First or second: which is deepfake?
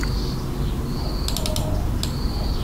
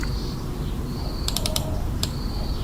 second